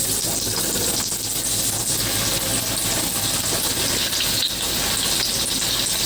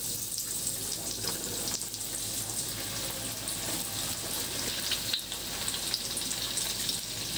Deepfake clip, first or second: second